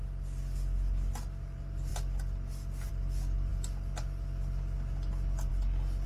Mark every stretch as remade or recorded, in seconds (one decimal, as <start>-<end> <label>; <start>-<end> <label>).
0.0-6.1 recorded